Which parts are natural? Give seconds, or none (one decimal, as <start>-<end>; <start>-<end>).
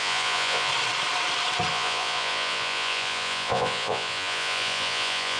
0.7-1.7